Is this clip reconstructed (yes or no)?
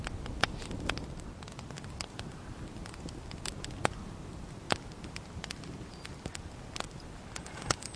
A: no